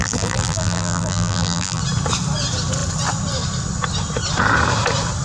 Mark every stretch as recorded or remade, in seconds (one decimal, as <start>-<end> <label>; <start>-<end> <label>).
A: 0.0-1.8 remade; 1.8-5.2 recorded